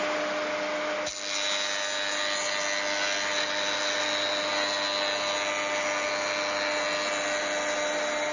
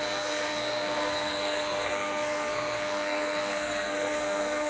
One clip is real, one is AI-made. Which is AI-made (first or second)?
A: second